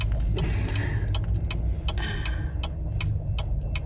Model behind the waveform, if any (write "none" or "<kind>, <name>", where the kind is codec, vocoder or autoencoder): none